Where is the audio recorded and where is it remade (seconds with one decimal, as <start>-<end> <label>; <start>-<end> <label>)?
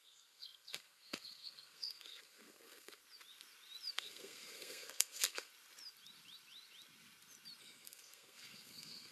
0.0-3.0 remade; 3.0-3.9 recorded; 3.9-5.5 remade; 5.5-7.6 recorded; 7.6-9.1 remade